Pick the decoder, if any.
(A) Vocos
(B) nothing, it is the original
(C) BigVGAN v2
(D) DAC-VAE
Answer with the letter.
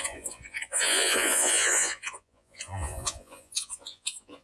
A